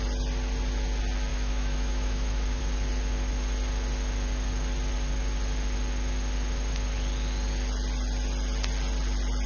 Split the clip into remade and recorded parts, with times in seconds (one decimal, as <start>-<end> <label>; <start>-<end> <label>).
0.0-1.3 recorded; 1.3-2.6 remade; 2.6-9.5 recorded